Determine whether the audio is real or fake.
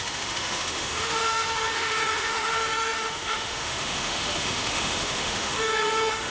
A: fake